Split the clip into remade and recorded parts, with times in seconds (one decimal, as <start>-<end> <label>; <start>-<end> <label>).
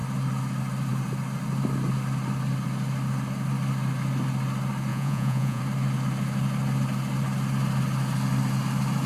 0.0-4.9 recorded; 4.9-5.6 remade; 5.6-9.1 recorded